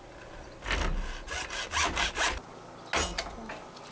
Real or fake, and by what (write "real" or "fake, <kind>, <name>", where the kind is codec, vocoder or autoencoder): real